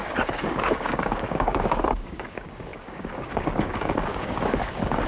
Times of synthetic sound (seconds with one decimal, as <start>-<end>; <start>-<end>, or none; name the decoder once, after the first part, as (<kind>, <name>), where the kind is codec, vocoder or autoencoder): 0.0-5.1 (codec, DAC)